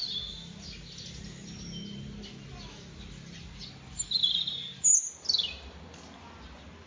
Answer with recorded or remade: recorded